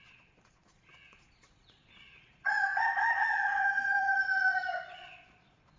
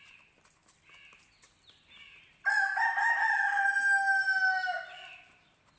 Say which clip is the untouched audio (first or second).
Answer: second